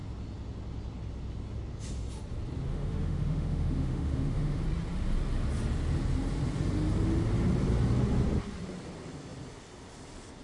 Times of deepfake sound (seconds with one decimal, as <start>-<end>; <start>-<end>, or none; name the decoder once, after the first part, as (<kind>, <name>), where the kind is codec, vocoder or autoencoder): 2.7-4.6 (autoencoder, DAC-VAE)